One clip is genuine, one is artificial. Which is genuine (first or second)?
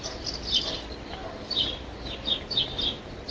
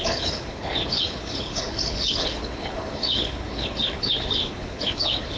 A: first